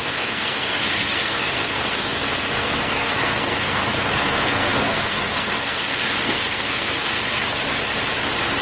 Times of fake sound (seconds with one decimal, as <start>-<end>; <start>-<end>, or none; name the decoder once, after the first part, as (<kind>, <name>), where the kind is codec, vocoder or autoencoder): 0.0-7.6 (codec, SNAC)